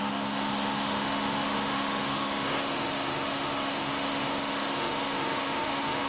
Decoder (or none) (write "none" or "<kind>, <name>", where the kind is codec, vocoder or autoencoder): autoencoder, DAC-VAE